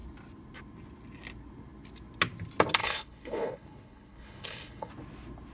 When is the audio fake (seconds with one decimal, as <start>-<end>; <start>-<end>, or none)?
2.8-4.9